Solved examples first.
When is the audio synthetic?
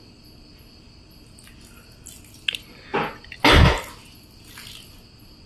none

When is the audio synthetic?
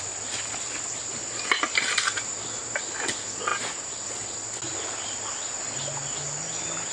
none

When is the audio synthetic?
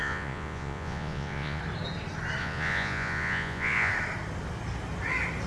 0.0-1.6; 2.4-3.9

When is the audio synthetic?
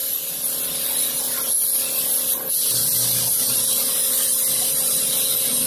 none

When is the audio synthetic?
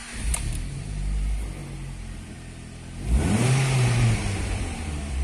0.7-1.6; 3.2-5.2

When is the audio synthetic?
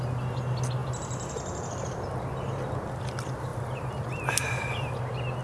0.8-1.3; 3.5-5.0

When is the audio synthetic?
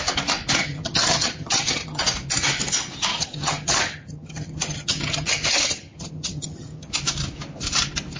0.6-2.0; 3.1-6.9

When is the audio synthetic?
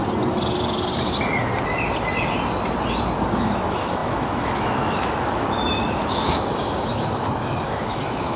3.4-8.4